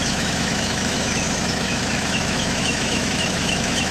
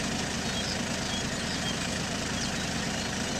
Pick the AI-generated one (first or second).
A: first